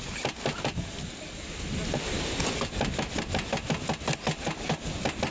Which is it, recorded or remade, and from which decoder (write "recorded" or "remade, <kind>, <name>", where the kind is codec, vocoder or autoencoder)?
recorded